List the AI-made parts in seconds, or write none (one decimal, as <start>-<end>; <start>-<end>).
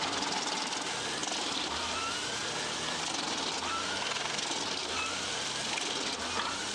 none